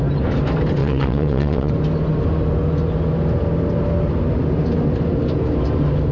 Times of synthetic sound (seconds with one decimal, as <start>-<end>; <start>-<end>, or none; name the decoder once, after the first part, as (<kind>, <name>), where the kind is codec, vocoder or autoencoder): 0.8-1.7 (vocoder, WaveNeXt)